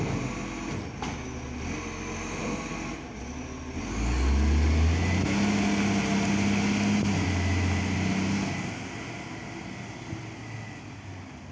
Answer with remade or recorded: recorded